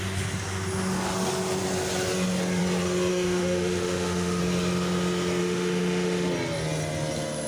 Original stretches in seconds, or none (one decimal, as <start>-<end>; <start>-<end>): 0.0-3.1; 4.4-5.4; 6.3-7.5